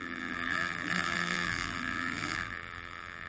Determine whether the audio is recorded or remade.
remade